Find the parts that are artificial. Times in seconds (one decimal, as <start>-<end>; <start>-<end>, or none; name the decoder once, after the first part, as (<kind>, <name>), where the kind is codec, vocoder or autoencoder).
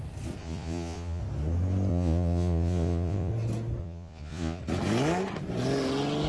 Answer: 0.4-1.2 (vocoder, Vocos); 1.9-3.3; 3.8-4.6